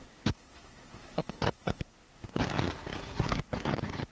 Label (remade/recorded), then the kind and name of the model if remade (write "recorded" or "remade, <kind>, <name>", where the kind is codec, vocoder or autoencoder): remade, codec, SNAC